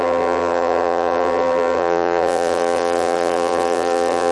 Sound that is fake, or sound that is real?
fake